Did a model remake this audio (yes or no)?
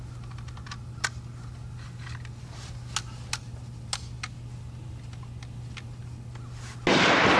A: no